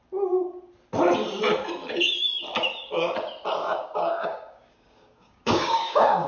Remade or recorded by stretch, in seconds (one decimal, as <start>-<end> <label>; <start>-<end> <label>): 0.0-3.6 recorded; 3.6-6.3 remade